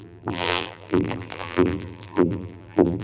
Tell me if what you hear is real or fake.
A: fake